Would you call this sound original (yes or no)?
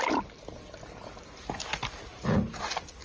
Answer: yes